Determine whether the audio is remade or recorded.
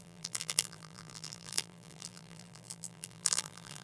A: remade